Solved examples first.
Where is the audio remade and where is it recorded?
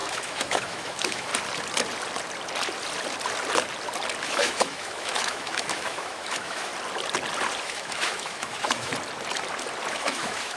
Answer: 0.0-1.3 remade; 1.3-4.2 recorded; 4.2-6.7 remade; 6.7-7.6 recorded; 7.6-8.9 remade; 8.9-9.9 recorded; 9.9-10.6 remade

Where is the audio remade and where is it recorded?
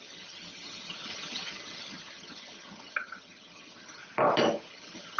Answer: 0.0-4.0 remade; 4.0-4.7 recorded; 4.7-5.2 remade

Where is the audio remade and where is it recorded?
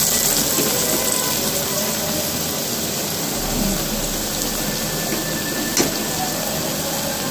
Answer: 0.0-7.3 recorded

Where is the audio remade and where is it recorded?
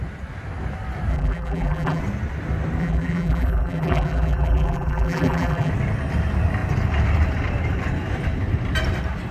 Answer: 0.0-1.1 recorded; 1.1-2.0 remade; 2.0-2.8 recorded; 2.8-5.7 remade; 5.7-9.3 recorded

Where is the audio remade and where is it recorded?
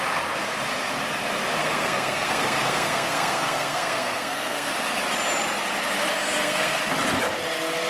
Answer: 0.0-1.6 recorded; 1.6-4.7 remade; 4.7-6.2 recorded; 6.2-6.8 remade; 6.8-7.9 recorded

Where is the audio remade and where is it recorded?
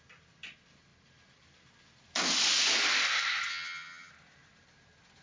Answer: 0.0-3.5 recorded; 3.5-4.1 remade; 4.1-5.2 recorded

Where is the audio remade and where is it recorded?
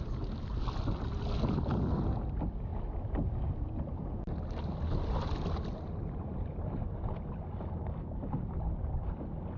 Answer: 0.0-9.6 recorded